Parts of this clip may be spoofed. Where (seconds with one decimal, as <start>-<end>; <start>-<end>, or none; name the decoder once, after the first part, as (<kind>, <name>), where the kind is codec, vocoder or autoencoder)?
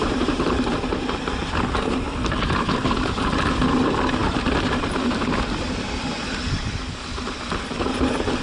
none